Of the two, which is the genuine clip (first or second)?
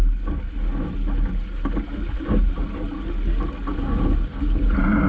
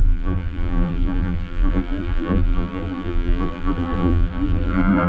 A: first